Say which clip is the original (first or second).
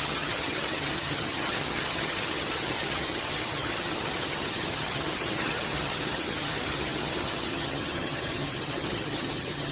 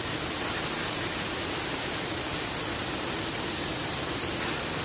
second